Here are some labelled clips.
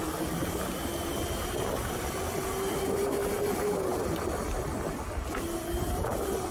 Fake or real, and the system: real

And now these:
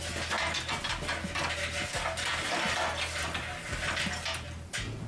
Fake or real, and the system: real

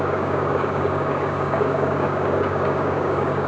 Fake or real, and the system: fake, codec, DAC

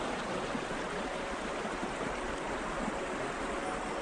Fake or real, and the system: real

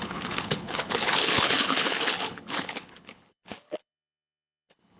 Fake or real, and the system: fake, codec, HILCodec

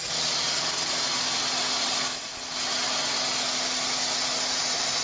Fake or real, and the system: real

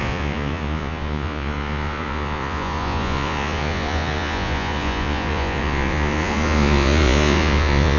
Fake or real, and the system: fake, vocoder, Vocos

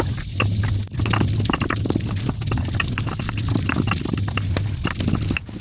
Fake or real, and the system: real